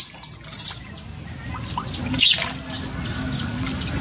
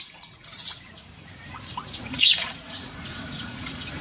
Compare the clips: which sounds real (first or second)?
first